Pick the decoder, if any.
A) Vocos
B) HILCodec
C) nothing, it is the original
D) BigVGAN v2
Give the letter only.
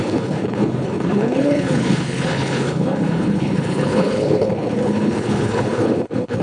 B